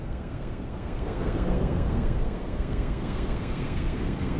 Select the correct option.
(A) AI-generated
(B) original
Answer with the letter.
A